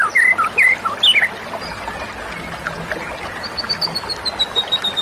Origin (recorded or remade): recorded